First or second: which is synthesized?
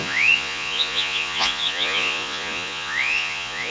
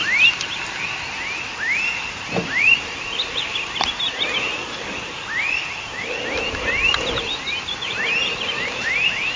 first